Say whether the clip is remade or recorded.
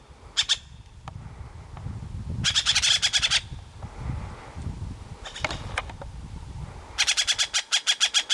recorded